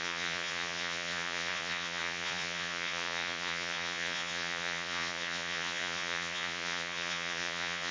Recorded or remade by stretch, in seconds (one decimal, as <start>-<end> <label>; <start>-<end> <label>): 0.0-7.9 remade